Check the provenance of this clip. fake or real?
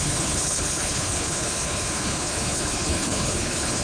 fake